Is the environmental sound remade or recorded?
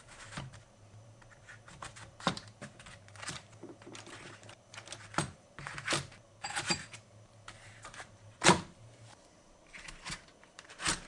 remade